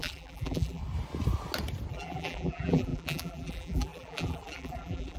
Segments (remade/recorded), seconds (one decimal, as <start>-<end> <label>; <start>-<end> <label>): 0.0-0.8 remade; 0.8-1.9 recorded; 1.9-5.2 remade